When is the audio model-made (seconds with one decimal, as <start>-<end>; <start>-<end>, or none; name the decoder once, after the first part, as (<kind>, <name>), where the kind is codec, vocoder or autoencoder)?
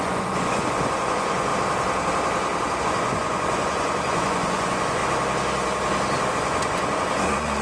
0.0-1.5 (vocoder, Vocos); 2.8-5.0; 6.3-7.6